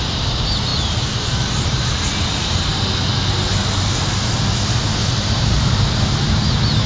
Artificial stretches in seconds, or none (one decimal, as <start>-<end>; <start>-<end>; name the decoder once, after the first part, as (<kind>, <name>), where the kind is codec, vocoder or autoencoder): 0.7-1.8 (vocoder, BigVGAN v2); 5.0-6.9